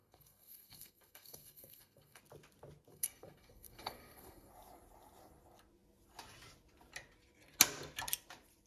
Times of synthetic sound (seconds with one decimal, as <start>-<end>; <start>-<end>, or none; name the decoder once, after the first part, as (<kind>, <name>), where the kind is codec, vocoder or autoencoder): 0.0-2.2 (codec, SNAC); 2.9-4.5